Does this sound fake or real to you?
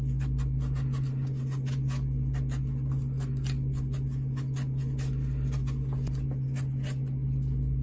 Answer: real